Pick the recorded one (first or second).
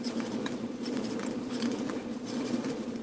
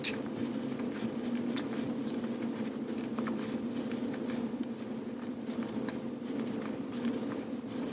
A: second